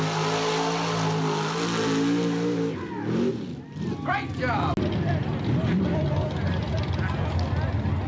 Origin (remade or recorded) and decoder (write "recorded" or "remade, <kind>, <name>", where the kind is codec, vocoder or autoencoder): recorded